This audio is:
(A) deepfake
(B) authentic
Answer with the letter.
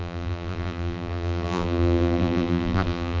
A